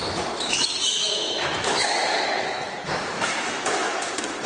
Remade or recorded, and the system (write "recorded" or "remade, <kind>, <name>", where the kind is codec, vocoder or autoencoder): remade, autoencoder, DAC-VAE